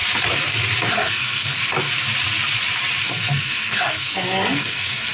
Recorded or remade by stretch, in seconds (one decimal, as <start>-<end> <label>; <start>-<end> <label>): 0.0-0.9 recorded; 0.9-1.6 remade; 1.6-3.0 recorded; 3.0-5.1 remade